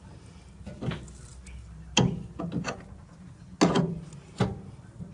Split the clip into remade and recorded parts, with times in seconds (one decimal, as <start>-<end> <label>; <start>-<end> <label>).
0.0-5.1 recorded